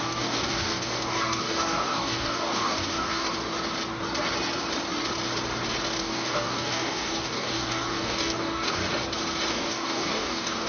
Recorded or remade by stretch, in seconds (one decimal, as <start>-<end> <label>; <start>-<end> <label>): 0.0-3.3 remade; 3.3-6.0 recorded; 6.0-8.8 remade; 8.8-9.5 recorded; 9.5-10.7 remade